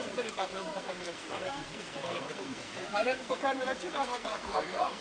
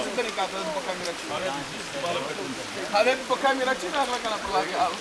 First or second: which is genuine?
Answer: second